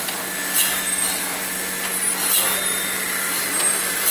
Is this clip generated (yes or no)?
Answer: no